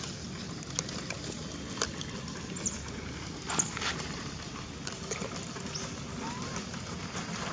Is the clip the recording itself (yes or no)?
yes